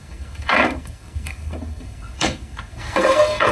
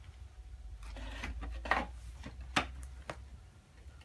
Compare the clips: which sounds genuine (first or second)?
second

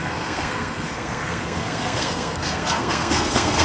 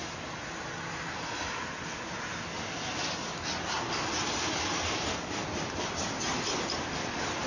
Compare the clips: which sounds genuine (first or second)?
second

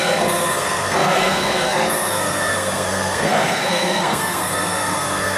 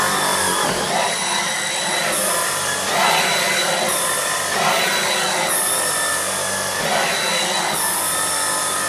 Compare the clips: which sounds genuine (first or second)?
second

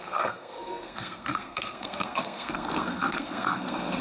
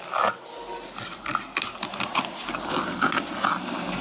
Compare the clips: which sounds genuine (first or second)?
second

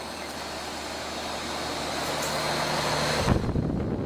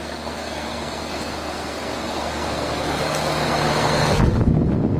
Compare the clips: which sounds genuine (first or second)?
first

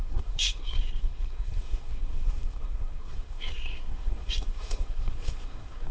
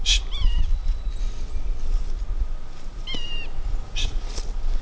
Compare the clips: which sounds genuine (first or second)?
second